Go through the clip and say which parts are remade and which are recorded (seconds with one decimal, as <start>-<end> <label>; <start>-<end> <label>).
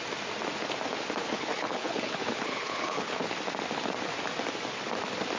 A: 0.0-1.2 recorded; 1.2-3.2 remade; 3.2-5.4 recorded